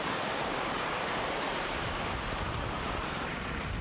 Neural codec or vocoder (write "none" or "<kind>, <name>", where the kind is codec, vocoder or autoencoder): vocoder, BigVGAN v2